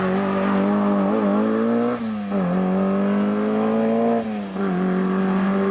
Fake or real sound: real